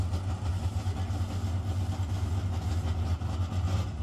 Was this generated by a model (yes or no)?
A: no